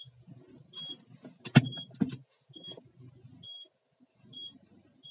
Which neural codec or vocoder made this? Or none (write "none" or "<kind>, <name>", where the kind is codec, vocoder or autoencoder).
none